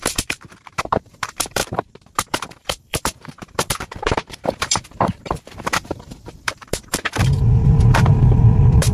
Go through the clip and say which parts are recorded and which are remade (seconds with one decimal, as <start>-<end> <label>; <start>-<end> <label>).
0.0-8.9 remade